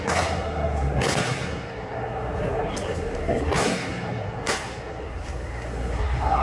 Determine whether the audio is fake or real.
fake